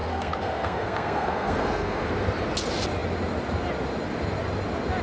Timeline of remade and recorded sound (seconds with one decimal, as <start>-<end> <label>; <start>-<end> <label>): 0.0-2.1 remade; 2.1-5.0 recorded